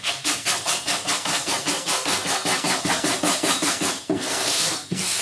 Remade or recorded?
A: remade